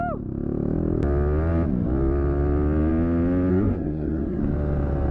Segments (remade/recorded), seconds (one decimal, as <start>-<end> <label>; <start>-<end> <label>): 0.0-3.5 recorded; 3.5-4.4 remade; 4.4-5.1 recorded

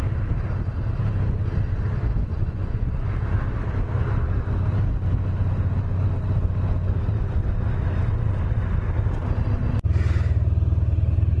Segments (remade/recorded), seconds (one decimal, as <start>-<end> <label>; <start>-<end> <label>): 0.0-2.3 recorded; 2.3-3.1 remade; 3.1-11.4 recorded

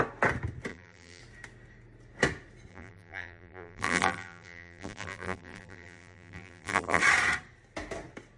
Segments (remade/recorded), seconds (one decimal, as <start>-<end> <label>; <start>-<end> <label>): 0.0-0.7 recorded; 0.7-1.2 remade; 1.2-2.7 recorded; 2.7-7.0 remade; 7.0-8.4 recorded

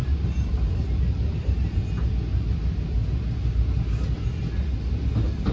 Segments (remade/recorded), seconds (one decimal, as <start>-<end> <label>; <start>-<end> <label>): 0.0-1.8 remade; 1.8-5.5 recorded

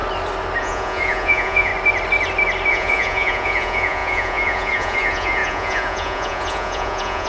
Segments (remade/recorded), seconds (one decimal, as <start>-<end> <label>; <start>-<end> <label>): 0.0-0.6 recorded; 0.6-1.7 remade; 1.7-2.7 recorded; 2.7-7.3 remade

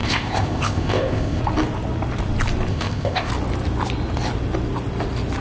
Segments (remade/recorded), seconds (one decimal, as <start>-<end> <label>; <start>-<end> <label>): 0.0-1.4 remade; 1.4-2.7 recorded; 2.7-3.3 remade; 3.3-5.4 recorded

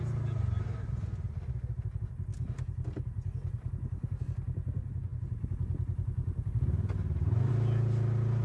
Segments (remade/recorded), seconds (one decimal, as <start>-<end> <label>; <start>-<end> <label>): 0.0-8.4 recorded